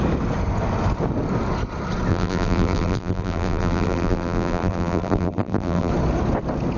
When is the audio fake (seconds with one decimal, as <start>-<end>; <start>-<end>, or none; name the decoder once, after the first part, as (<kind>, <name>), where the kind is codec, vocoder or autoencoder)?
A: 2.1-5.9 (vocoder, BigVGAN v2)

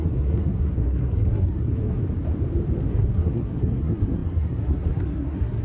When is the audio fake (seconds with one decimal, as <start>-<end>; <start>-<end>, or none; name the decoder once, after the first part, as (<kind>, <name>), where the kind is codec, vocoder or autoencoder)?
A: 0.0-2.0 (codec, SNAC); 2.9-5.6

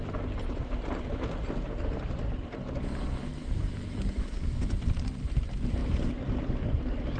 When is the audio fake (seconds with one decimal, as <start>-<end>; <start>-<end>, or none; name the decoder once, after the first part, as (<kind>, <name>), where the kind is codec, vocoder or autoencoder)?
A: 3.4-4.7 (autoencoder, DAC-VAE)